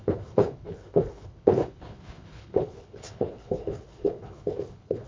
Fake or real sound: fake